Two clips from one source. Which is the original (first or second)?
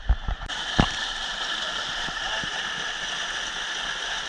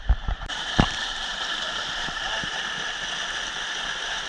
first